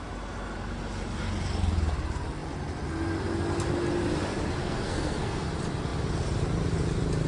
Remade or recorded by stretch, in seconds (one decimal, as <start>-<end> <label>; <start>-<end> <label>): 0.0-4.6 recorded; 4.6-5.4 remade; 5.4-7.3 recorded